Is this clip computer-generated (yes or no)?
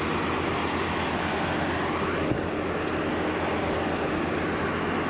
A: no